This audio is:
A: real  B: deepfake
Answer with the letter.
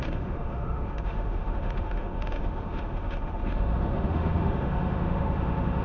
B